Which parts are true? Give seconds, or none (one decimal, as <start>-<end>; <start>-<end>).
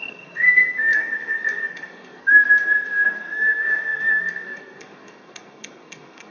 none